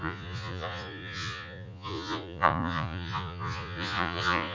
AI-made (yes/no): yes